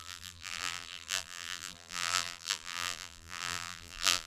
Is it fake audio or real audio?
fake